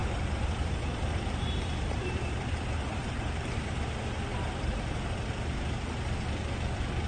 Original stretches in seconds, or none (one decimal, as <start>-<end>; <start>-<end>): 3.8-4.3; 5.0-7.1